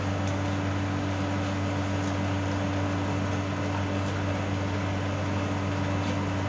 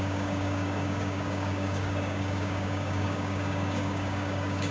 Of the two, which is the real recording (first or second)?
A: first